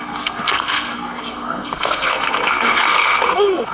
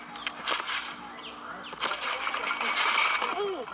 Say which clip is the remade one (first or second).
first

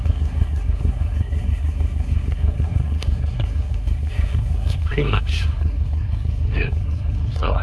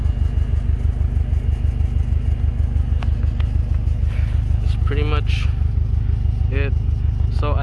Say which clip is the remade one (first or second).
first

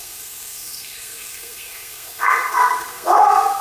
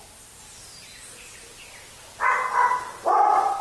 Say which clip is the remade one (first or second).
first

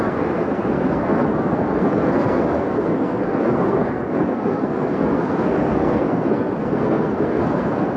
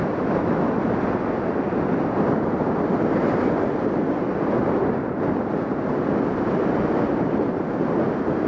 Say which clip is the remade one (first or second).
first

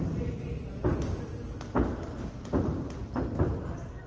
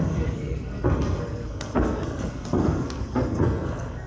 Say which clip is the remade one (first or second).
second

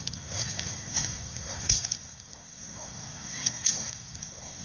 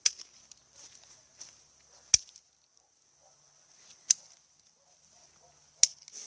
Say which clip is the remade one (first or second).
first